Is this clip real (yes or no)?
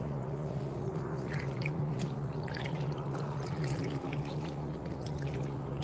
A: no